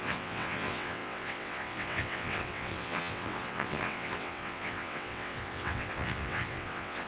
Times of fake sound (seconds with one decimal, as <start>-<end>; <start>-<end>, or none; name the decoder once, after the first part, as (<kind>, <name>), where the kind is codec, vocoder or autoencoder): 0.0-7.1 (vocoder, WaveNeXt)